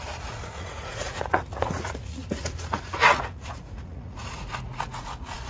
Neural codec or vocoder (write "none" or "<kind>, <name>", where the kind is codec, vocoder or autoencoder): vocoder, Vocos